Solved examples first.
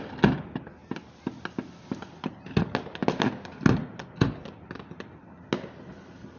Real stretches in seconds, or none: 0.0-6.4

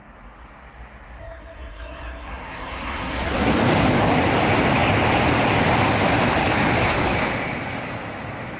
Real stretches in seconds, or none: 0.0-1.2; 3.5-8.6